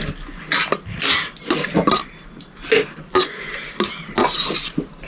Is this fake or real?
real